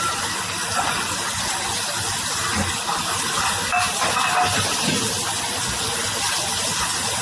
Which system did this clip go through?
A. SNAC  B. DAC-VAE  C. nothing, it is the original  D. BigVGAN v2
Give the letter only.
C